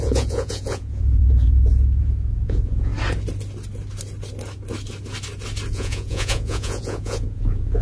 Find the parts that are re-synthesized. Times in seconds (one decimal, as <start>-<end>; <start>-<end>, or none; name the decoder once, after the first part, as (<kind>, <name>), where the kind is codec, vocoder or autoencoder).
0.0-2.9 (vocoder, Vocos); 5.7-7.8